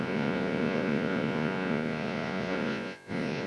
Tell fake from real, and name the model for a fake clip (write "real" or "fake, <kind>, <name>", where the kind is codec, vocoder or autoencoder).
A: fake, vocoder, Vocos